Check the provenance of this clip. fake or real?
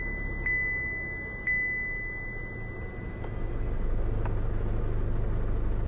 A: real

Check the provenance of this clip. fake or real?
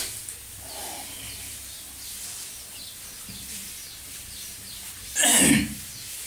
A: real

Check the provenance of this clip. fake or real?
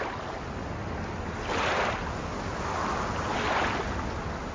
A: real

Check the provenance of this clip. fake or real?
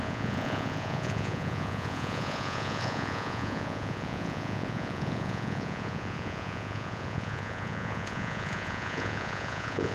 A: fake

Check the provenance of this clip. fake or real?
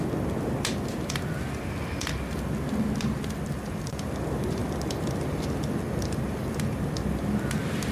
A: real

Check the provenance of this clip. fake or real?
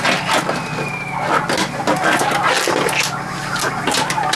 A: real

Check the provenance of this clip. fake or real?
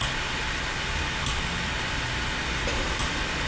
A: real